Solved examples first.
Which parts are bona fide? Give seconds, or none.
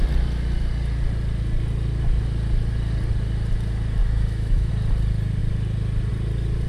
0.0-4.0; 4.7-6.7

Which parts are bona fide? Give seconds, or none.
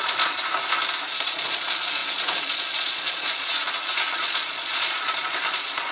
0.4-1.2; 3.6-4.1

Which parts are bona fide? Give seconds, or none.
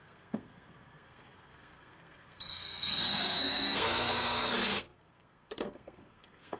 none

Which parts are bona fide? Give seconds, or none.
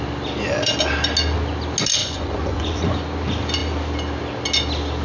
0.0-2.0; 2.9-5.0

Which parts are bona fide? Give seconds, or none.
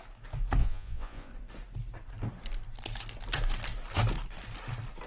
0.0-0.6; 1.3-5.1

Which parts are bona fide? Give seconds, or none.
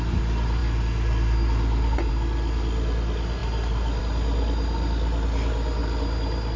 0.0-6.6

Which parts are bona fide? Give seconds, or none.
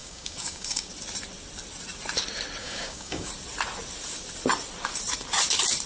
0.9-2.6; 3.3-5.9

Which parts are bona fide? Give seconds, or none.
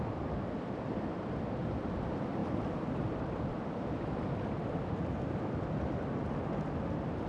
0.0-7.3